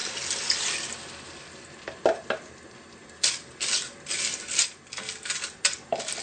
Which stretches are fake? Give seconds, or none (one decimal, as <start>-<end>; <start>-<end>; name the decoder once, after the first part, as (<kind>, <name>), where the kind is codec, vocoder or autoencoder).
none